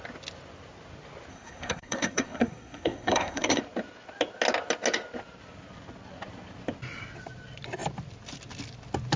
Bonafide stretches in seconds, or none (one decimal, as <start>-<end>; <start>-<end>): 0.0-1.3; 3.6-9.2